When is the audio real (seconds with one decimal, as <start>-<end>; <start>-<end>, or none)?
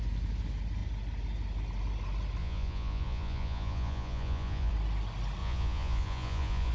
0.0-2.4; 4.7-5.4